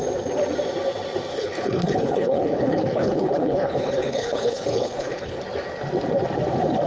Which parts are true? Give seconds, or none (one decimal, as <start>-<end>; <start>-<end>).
0.0-1.3; 5.4-6.9